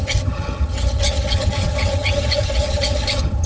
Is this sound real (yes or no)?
no